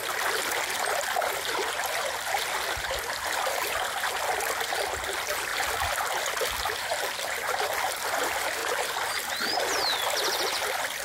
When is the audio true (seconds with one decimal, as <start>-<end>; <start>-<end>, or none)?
0.0-6.9; 7.5-8.6; 9.3-11.0